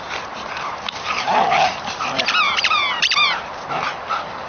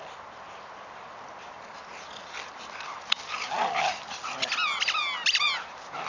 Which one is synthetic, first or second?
first